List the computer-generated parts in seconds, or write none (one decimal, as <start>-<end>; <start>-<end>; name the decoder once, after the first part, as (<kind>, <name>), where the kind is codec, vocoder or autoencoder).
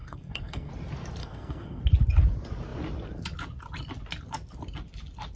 0.0-0.7 (codec, SNAC); 1.2-1.8